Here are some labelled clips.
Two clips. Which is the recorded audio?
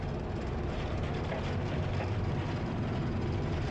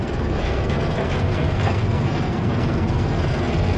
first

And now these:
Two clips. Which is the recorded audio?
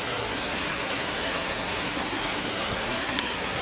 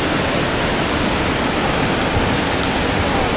second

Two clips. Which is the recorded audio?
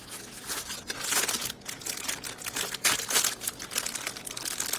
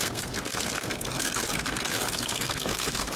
first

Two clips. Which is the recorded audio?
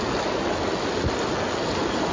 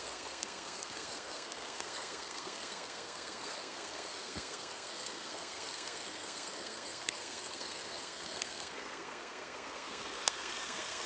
first